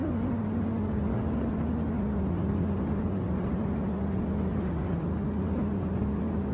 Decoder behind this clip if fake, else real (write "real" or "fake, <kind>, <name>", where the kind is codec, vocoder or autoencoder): real